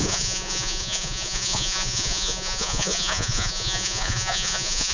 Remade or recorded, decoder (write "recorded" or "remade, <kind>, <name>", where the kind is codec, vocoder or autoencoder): remade, vocoder, Vocos